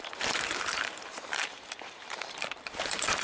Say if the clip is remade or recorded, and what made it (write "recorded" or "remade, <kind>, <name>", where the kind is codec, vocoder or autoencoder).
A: remade, vocoder, BigVGAN v2